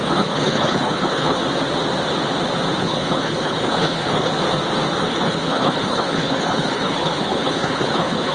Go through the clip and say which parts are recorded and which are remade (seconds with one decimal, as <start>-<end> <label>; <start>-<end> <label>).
0.0-1.4 remade; 1.4-2.8 recorded; 2.8-4.3 remade; 4.3-5.0 recorded; 5.0-8.3 remade